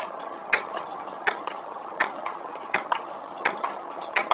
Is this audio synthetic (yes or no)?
yes